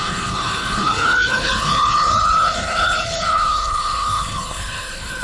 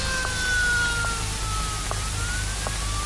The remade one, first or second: first